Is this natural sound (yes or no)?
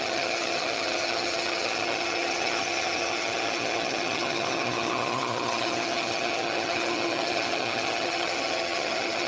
no